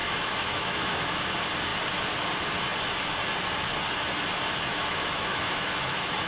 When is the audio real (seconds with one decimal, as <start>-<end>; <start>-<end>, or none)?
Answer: 1.2-4.7